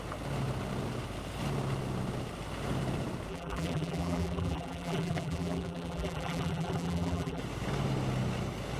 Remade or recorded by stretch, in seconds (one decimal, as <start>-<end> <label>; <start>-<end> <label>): 0.0-3.3 recorded; 3.3-7.4 remade; 7.4-8.8 recorded